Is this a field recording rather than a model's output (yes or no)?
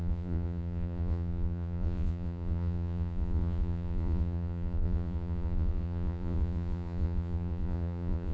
no